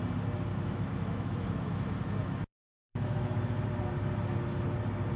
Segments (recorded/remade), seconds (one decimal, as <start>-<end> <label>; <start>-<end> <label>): 0.0-0.5 recorded; 0.5-1.8 remade; 1.8-2.2 recorded; 2.2-3.4 remade; 3.4-5.2 recorded